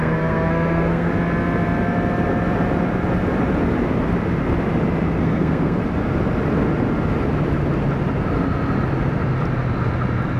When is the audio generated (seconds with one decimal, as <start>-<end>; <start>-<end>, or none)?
0.0-1.1; 5.2-5.8